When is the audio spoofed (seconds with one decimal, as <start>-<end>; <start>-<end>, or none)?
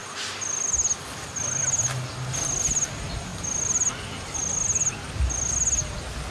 none